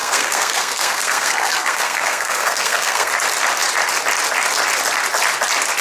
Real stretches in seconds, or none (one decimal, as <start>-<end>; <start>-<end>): 3.1-5.8